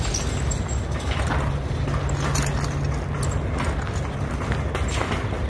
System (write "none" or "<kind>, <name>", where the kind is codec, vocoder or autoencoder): none